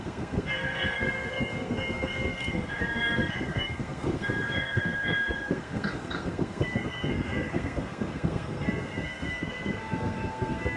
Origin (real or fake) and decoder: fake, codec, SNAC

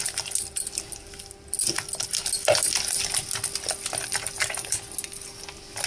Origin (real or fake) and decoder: real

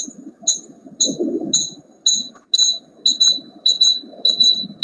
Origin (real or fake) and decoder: real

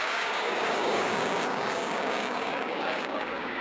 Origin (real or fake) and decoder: fake, codec, DAC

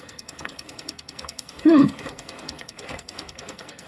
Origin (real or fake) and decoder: fake, codec, SNAC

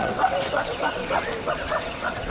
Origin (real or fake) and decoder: fake, vocoder, WaveNeXt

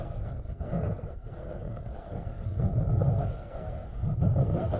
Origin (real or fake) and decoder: fake, codec, SNAC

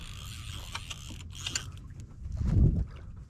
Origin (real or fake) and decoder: real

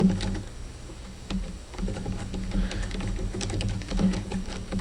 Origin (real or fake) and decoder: fake, codec, DAC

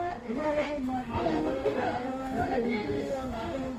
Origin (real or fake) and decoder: fake, autoencoder, DAC-VAE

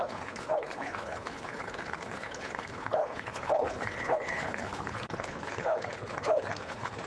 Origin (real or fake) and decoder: fake, codec, HILCodec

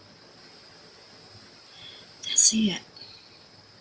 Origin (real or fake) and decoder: real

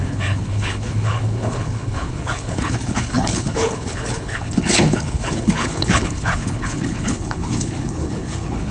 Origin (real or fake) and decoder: fake, codec, HILCodec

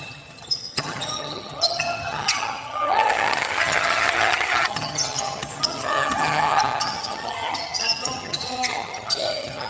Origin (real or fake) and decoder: fake, vocoder, HiFi-GAN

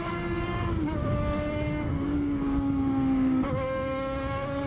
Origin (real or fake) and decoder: fake, codec, DAC